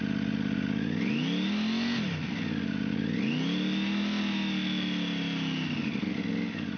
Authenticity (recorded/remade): recorded